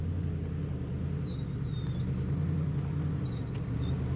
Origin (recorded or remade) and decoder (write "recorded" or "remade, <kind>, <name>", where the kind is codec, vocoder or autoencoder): recorded